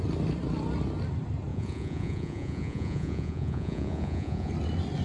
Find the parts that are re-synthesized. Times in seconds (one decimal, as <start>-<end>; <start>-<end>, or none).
1.5-4.5